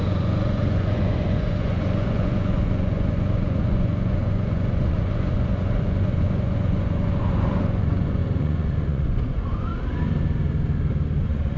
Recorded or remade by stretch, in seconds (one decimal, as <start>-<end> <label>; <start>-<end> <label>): 0.0-9.7 remade; 9.7-11.2 recorded; 11.2-11.6 remade